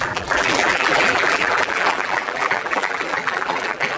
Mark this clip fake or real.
fake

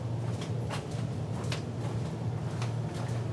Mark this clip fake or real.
real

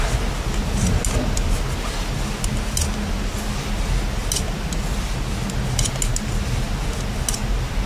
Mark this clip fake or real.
real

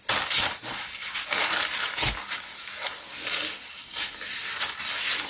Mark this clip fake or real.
real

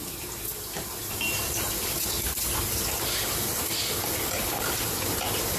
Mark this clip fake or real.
real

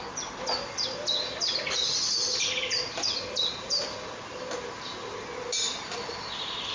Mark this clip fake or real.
real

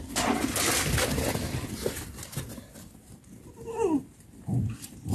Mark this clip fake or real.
real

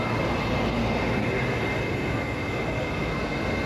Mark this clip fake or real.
real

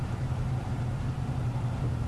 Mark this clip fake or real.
fake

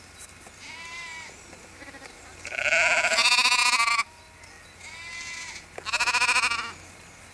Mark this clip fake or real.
real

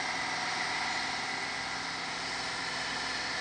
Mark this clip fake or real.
real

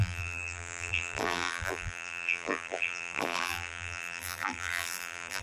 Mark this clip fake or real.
fake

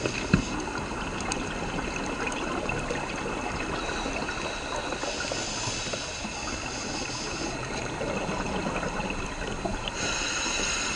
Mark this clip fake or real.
real